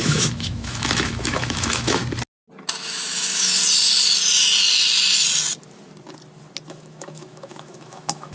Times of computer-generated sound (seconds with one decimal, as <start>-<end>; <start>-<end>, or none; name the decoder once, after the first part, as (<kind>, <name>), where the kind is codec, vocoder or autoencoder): 0.0-2.0 (autoencoder, DAC-VAE); 2.8-3.6; 6.7-8.3